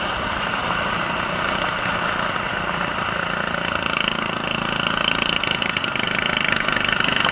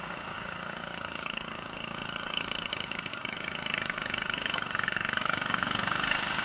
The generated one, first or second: second